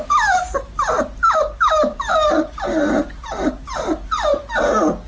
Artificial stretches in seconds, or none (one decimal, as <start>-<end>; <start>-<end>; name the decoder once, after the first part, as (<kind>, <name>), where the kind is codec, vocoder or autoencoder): 0.0-4.3 (vocoder, BigVGAN v2)